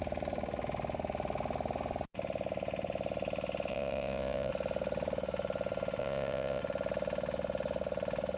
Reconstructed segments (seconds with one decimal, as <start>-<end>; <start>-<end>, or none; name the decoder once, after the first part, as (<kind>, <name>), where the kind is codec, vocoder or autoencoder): 3.7-4.5 (vocoder, Vocos); 6.0-6.6